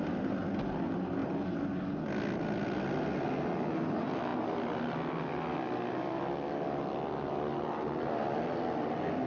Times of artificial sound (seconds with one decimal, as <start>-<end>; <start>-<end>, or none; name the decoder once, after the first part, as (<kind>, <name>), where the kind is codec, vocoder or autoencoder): none

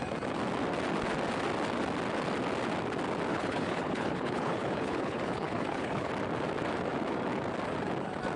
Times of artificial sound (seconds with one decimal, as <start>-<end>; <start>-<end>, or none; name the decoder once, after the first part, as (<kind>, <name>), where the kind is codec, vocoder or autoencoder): 3.3-6.1 (codec, HILCodec)

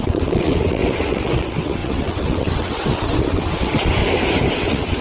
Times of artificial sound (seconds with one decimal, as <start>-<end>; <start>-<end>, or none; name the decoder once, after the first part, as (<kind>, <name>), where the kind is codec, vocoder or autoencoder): 0.0-4.0 (vocoder, WaveNeXt); 4.5-5.0

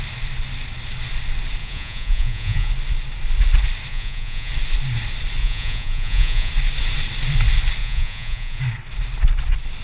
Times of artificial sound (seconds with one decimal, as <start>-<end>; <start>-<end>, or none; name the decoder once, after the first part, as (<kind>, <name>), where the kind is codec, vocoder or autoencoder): 1.6-2.7 (vocoder, Vocos); 3.9-4.5; 5.4-6.5; 7.8-8.6